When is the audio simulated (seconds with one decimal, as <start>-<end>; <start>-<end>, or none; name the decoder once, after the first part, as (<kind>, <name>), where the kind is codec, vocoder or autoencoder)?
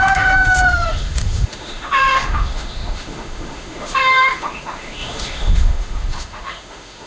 0.0-7.1 (autoencoder, DAC-VAE)